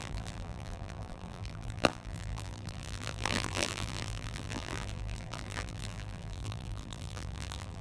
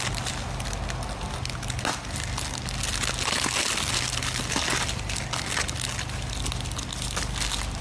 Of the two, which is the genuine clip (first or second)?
second